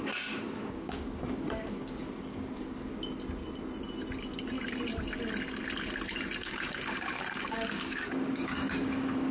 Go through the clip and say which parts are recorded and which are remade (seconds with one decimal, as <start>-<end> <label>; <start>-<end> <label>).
0.0-2.9 remade; 2.9-6.4 recorded; 6.4-9.3 remade